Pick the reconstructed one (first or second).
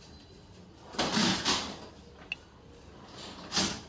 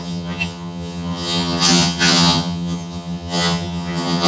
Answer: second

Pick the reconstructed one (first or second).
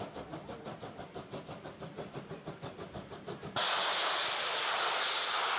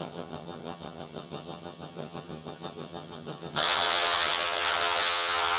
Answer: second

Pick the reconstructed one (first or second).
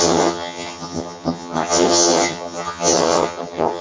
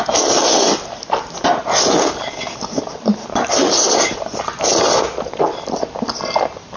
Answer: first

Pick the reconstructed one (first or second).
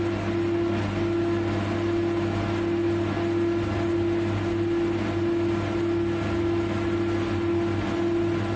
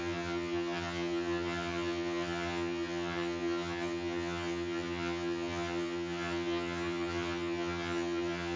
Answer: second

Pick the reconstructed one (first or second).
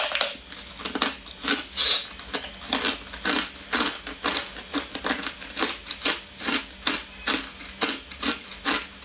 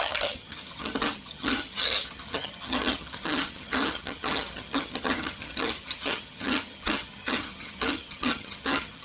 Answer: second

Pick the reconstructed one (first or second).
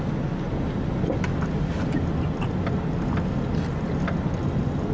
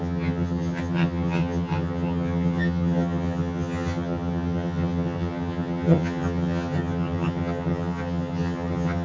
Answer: second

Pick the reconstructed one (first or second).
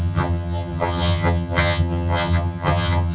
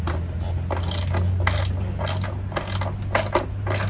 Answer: first